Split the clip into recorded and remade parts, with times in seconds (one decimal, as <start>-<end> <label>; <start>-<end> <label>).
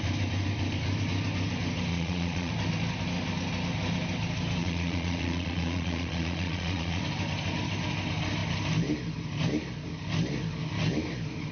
0.0-1.9 recorded; 1.9-2.5 remade; 2.5-4.6 recorded; 4.6-7.0 remade; 7.0-11.5 recorded